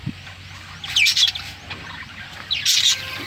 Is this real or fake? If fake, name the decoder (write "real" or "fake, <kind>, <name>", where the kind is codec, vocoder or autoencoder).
real